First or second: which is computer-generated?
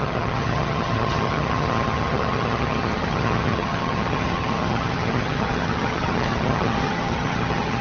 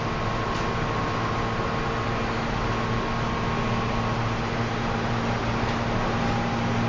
first